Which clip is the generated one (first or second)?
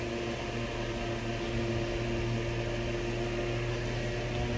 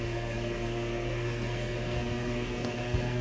second